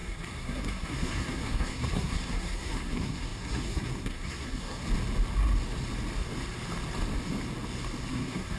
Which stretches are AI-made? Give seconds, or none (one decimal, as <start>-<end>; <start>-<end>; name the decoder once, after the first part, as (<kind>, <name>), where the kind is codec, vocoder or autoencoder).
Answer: 0.0-4.8 (codec, SNAC); 8.1-8.6

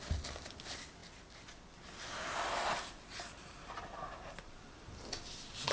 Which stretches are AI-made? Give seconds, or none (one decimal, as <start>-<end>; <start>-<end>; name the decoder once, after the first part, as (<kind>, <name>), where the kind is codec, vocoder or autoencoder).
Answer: none